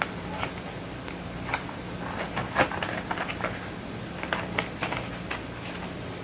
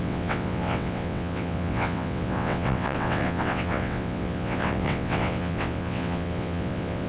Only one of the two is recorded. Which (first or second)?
first